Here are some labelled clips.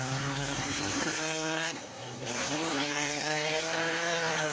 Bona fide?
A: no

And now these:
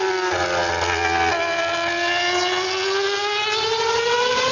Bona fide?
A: yes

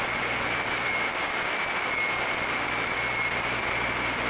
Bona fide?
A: yes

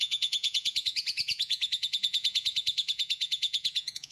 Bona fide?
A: no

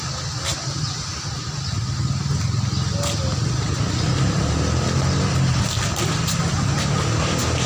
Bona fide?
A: yes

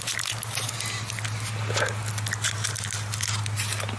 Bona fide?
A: yes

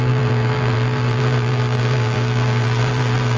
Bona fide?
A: no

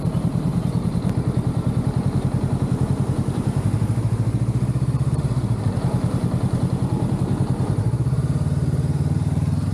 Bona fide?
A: no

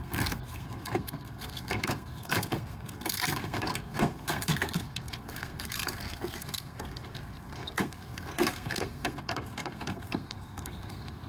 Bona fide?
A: no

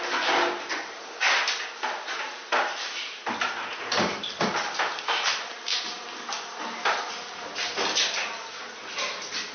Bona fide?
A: yes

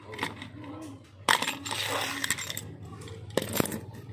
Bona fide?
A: yes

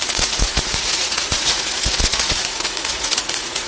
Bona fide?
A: no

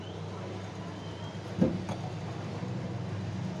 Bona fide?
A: yes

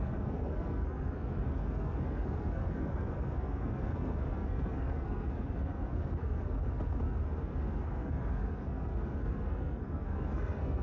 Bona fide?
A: no